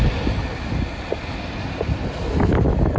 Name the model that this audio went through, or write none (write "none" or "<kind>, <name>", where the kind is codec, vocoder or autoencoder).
none